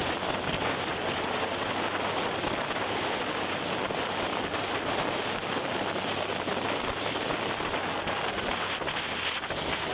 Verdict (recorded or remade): recorded